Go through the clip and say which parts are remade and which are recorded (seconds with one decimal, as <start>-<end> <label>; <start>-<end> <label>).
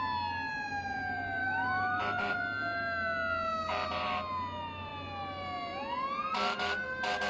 0.0-1.4 recorded; 1.4-2.0 remade; 2.0-7.3 recorded